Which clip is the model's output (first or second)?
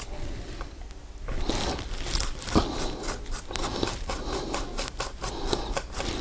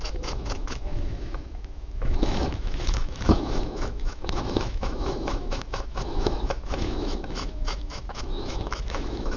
second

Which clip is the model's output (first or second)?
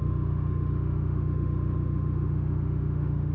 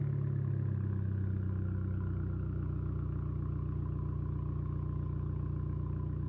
first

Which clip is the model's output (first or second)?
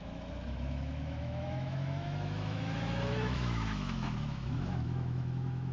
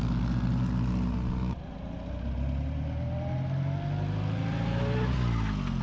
first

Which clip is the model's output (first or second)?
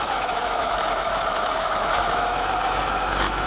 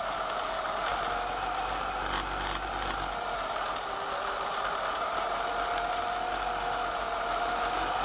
first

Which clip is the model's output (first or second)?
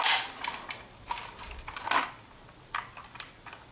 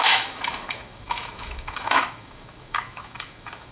second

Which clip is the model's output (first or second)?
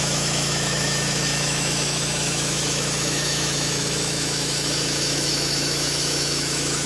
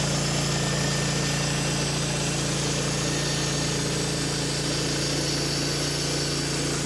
first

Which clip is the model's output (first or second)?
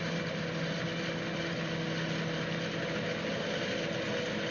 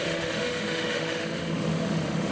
second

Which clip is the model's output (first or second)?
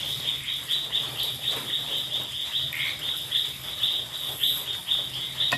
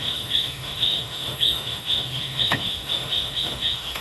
second